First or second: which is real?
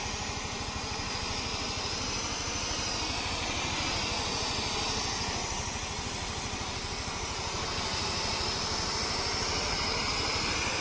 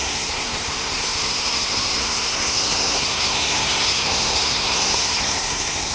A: first